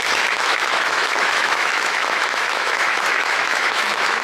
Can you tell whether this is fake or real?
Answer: fake